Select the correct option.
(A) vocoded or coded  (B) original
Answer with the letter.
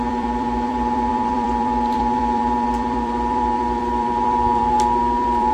A